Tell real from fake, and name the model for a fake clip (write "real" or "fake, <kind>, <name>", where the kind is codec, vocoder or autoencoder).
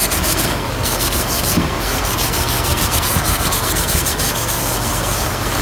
fake, codec, SNAC